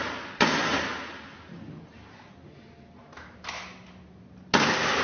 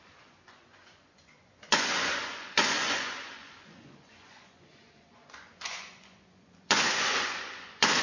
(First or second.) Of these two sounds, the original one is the first